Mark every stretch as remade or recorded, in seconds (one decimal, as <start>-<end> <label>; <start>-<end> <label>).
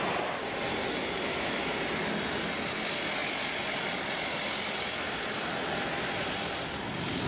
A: 0.0-1.0 recorded; 1.0-1.8 remade; 1.8-7.3 recorded